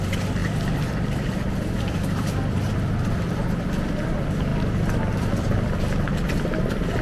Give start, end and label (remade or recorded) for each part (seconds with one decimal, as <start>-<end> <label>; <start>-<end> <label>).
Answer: 0.0-0.4 recorded; 0.4-2.7 remade; 2.7-4.5 recorded; 4.5-5.8 remade; 5.8-7.0 recorded